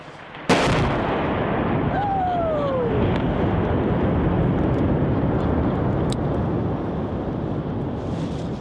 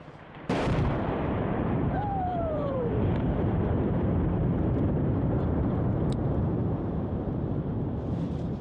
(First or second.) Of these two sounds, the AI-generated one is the second